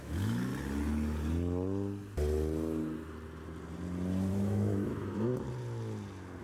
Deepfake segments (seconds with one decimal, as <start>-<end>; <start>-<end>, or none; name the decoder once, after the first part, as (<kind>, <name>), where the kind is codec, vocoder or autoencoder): 0.0-0.5 (autoencoder, DAC-VAE); 4.3-5.3